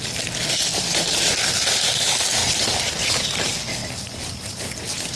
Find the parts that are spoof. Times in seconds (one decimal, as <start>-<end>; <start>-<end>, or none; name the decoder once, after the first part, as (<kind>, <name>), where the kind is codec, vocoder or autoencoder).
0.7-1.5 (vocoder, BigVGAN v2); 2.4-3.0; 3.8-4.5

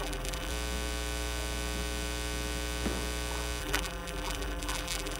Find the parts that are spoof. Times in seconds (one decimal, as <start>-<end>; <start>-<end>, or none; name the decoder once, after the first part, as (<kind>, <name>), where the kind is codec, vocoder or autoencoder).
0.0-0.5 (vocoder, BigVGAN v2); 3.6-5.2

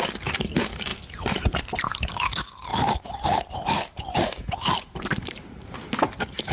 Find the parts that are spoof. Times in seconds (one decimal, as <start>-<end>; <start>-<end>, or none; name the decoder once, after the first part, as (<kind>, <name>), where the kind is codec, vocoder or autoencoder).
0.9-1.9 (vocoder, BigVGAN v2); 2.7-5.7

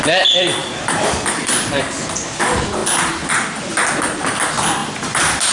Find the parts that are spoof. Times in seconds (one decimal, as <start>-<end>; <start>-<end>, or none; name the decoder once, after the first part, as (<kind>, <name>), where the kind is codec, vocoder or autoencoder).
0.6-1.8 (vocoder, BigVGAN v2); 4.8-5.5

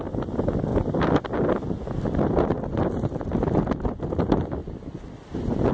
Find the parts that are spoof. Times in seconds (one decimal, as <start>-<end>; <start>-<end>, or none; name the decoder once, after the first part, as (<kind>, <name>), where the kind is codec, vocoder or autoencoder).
0.0-0.7 (vocoder, BigVGAN v2); 4.1-4.6

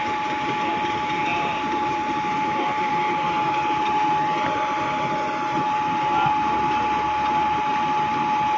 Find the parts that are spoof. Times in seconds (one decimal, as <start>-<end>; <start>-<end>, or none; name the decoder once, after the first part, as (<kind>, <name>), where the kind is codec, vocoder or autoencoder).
1.3-2.9 (vocoder, BigVGAN v2)